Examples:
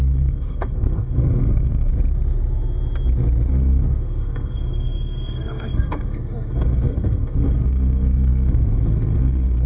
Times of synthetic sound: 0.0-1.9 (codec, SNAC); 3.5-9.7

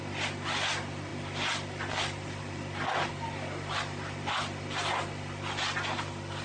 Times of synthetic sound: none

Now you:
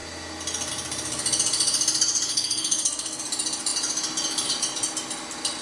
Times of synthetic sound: 2.3-3.2 (codec, SNAC)

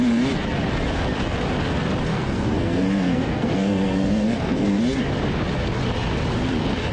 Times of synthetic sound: 2.1-4.8 (codec, SNAC)

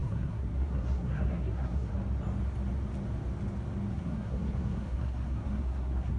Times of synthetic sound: 0.0-1.9 (codec, SNAC); 3.9-6.2

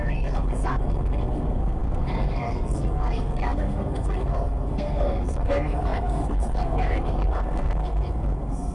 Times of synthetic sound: 0.0-8.7 (codec, SNAC)

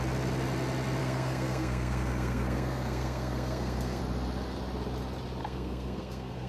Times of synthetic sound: 1.0-4.0 (codec, SNAC); 5.4-6.5

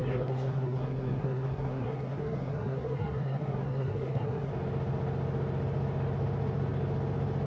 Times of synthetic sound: 0.0-4.5 (codec, SNAC)